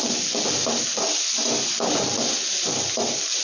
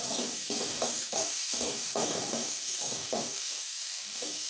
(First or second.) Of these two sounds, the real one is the first